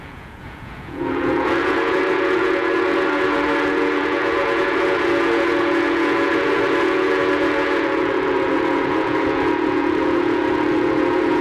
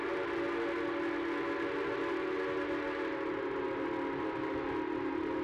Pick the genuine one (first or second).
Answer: second